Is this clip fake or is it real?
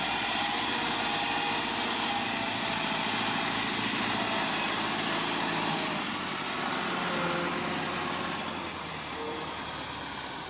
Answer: real